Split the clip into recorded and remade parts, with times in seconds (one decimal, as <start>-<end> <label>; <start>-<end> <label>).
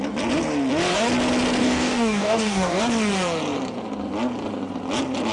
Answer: 0.0-1.6 recorded; 1.6-2.8 remade; 2.8-5.3 recorded